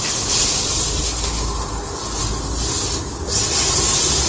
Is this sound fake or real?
real